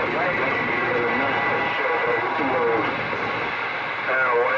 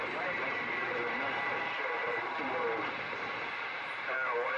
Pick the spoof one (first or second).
second